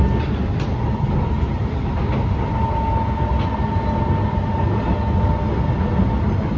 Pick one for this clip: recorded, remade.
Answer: recorded